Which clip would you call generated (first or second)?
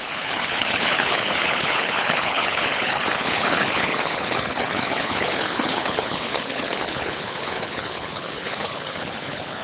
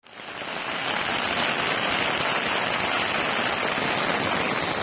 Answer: first